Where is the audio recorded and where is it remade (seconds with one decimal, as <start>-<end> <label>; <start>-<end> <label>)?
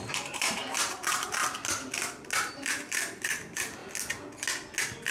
0.0-1.4 remade; 1.4-2.5 recorded; 2.5-3.8 remade; 3.8-5.1 recorded